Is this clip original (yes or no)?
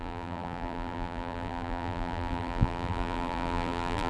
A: no